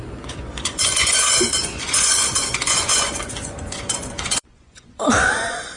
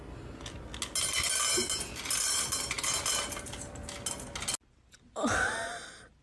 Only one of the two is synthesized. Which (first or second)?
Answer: first